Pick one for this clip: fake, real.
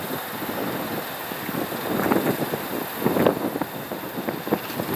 real